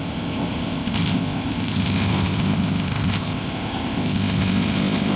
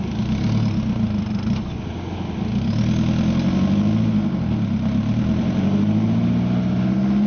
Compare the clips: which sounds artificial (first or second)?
first